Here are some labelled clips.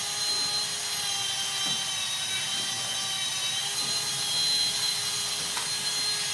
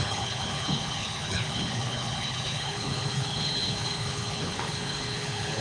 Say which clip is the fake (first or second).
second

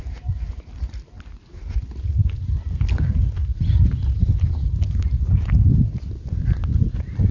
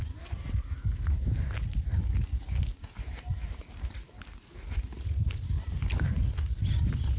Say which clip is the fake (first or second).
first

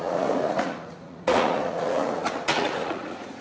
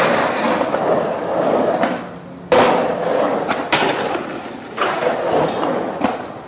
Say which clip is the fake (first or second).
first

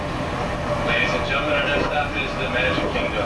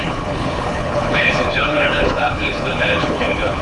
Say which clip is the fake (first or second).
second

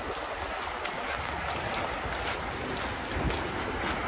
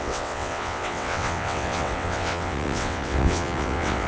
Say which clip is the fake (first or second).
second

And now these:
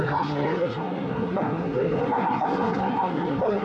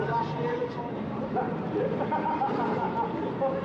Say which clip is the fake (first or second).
first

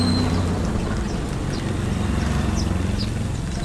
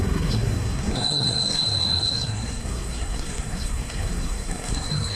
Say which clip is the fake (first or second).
second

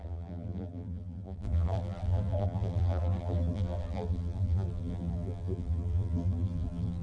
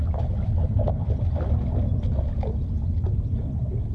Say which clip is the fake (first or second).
first